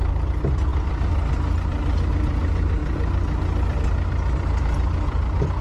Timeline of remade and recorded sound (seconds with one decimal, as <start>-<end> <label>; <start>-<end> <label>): 0.0-5.6 recorded